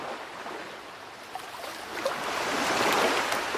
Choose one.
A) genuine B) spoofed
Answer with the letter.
A